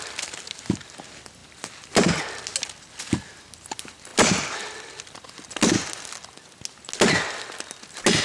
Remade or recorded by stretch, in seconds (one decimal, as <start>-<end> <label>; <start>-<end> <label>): 0.0-8.2 recorded

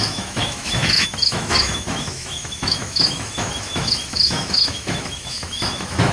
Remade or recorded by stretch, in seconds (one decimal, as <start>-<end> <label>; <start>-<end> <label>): 0.0-6.1 remade

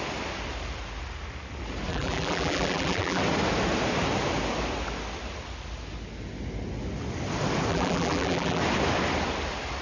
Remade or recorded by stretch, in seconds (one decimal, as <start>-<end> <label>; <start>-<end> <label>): 0.0-1.9 recorded; 1.9-3.2 remade; 3.2-7.7 recorded; 7.7-8.6 remade; 8.6-9.8 recorded

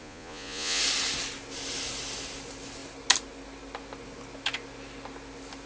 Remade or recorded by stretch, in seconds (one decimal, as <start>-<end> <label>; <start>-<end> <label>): 0.0-0.8 remade; 0.8-5.7 recorded

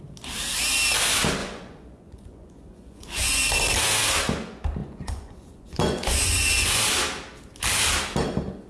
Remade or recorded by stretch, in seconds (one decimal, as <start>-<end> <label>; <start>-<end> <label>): 0.0-1.4 recorded; 1.4-3.5 remade; 3.5-4.8 recorded; 4.8-6.8 remade; 6.8-8.7 recorded